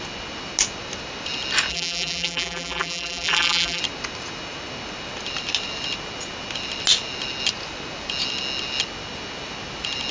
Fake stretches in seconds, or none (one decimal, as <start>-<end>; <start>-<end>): 1.7-3.8